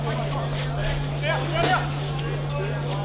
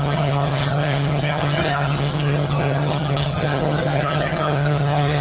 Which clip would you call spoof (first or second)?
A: second